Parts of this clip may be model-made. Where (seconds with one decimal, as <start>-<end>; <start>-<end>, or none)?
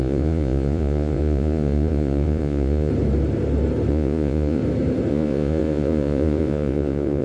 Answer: 0.0-2.9; 3.9-4.6; 5.1-7.2